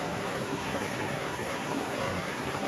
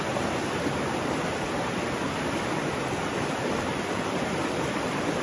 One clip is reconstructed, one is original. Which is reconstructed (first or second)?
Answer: first